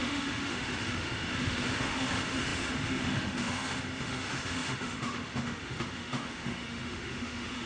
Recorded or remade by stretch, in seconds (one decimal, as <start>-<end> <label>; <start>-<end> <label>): 0.0-7.7 remade